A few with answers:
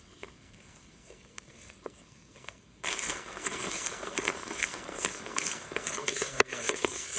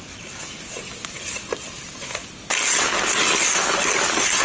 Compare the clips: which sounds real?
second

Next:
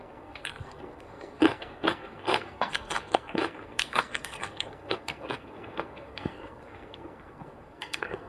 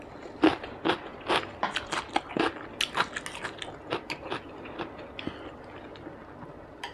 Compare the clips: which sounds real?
second